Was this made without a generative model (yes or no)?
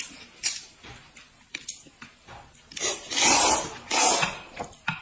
yes